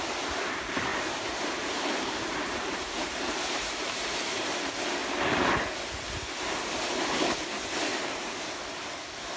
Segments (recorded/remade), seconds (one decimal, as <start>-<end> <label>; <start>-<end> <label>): 0.0-0.9 recorded; 0.9-4.6 remade; 4.6-7.9 recorded; 7.9-9.0 remade; 9.0-9.4 recorded